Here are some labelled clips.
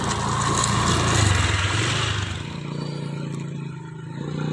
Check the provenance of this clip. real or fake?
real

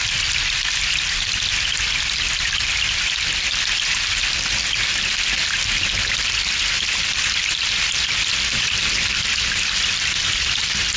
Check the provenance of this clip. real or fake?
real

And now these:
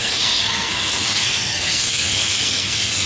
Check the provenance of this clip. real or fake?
fake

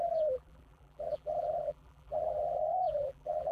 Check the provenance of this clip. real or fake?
fake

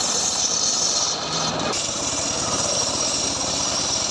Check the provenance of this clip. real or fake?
real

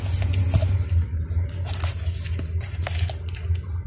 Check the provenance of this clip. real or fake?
real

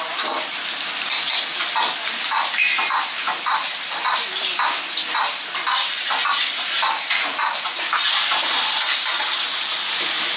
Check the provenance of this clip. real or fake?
fake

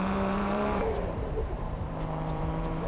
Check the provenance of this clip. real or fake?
fake